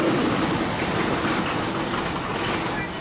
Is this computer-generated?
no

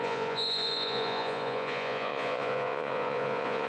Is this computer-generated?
yes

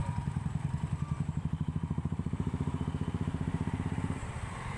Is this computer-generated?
yes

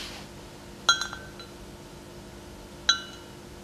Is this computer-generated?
no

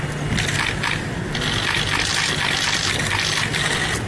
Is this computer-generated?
no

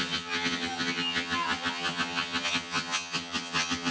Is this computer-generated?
yes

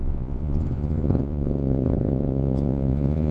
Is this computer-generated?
yes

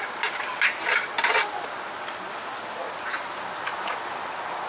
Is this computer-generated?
no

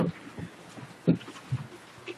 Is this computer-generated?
no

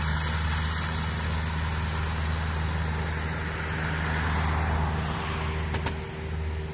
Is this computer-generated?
no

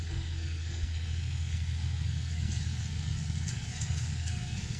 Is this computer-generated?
yes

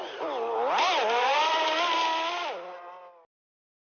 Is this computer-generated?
no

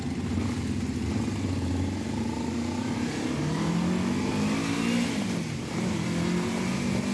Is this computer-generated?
no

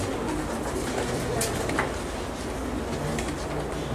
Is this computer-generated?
no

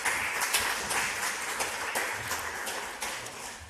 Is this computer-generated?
no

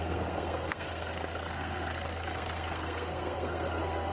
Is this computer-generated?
yes